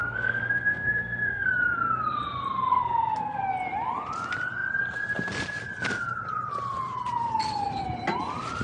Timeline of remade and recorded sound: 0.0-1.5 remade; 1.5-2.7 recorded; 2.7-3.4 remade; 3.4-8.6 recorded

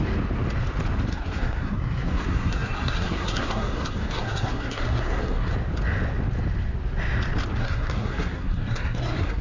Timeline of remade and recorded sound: 0.0-1.1 recorded; 1.1-5.5 remade; 5.5-7.6 recorded; 7.6-9.4 remade

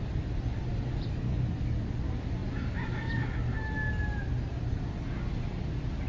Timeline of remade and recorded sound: 0.0-6.1 recorded

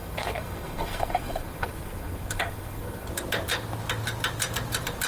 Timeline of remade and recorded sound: 0.0-3.1 remade; 3.1-5.1 recorded